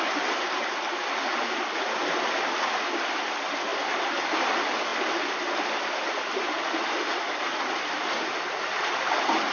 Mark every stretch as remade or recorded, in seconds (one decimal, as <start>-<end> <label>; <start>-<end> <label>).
0.0-9.5 recorded